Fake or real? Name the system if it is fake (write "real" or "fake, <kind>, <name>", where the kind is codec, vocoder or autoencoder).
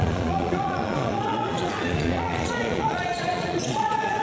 fake, vocoder, Vocos